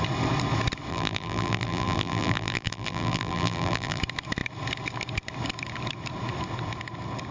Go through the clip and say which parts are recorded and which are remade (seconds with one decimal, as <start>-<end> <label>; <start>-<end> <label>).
0.0-0.9 recorded; 0.9-4.0 remade; 4.0-7.3 recorded